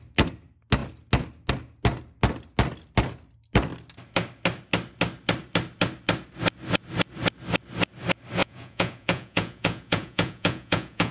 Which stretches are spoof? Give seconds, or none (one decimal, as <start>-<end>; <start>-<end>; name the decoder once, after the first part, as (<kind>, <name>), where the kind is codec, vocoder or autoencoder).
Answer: 8.4-11.1 (vocoder, Vocos)